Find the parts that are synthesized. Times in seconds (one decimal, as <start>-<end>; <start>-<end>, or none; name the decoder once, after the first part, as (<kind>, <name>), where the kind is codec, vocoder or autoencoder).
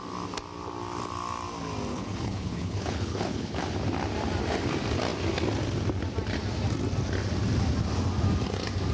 1.9-3.6 (codec, HILCodec)